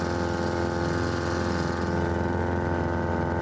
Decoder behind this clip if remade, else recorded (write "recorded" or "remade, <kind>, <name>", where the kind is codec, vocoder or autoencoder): recorded